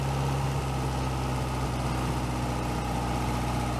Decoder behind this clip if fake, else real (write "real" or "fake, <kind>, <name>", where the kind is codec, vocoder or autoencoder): real